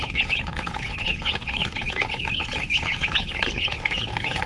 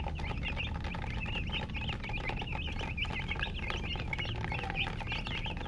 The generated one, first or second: first